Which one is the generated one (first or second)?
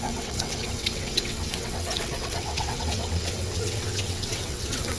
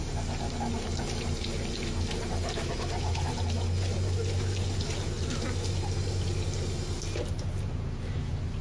first